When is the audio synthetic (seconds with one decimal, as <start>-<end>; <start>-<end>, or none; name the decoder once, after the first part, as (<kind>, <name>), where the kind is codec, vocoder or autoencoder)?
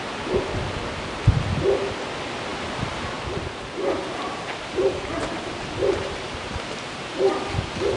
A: 2.5-7.3 (vocoder, BigVGAN v2)